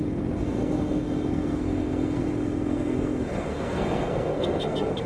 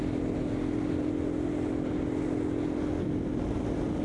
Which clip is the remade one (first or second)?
first